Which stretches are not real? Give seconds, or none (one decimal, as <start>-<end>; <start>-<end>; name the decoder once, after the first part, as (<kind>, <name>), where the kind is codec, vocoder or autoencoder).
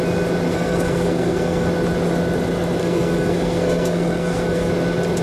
0.5-1.7 (codec, SNAC); 2.8-4.7